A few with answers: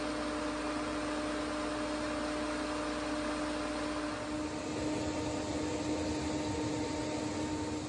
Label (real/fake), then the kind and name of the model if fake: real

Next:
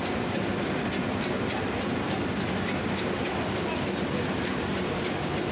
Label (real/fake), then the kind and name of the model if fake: real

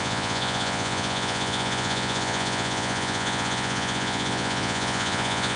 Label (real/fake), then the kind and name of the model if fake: fake, vocoder, Vocos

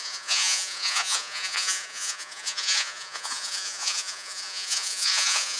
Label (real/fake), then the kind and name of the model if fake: fake, vocoder, Vocos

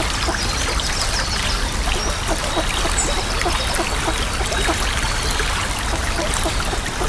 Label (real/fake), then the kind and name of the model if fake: real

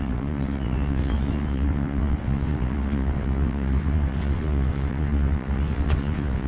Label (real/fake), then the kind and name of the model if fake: fake, vocoder, WaveNeXt